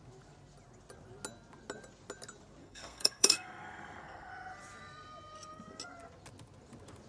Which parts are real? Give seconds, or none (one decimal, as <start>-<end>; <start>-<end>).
0.0-2.6; 4.3-7.1